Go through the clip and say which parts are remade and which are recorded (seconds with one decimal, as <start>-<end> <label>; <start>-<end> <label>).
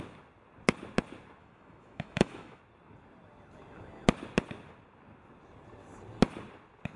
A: 0.0-1.4 recorded; 1.4-2.6 remade; 2.6-7.0 recorded